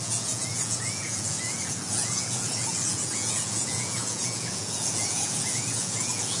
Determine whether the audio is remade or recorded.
remade